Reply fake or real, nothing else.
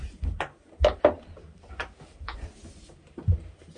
real